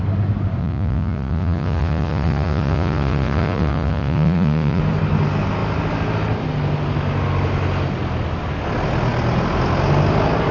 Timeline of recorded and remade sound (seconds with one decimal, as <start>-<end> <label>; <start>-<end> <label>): 0.0-0.6 recorded; 0.6-4.8 remade; 4.8-10.5 recorded